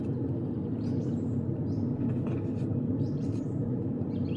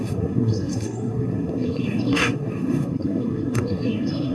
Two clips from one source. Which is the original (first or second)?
first